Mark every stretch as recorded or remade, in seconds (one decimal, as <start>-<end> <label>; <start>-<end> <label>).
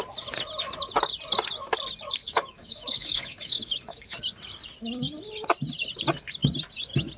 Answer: 0.0-2.2 recorded; 2.2-4.2 remade; 4.2-7.2 recorded